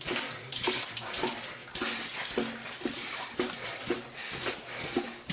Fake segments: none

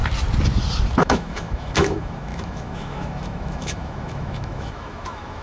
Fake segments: 1.0-5.4 (autoencoder, DAC-VAE)

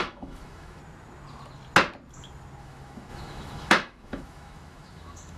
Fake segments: 0.0-0.8 (autoencoder, DAC-VAE); 2.6-5.4